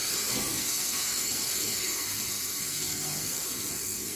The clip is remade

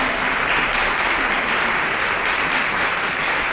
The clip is recorded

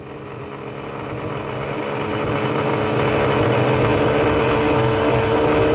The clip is recorded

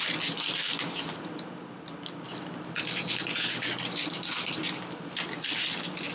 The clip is recorded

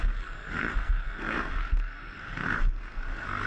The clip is remade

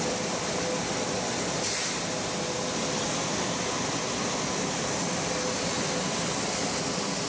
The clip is recorded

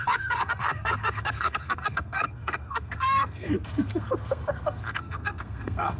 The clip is remade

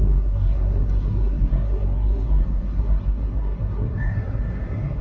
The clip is remade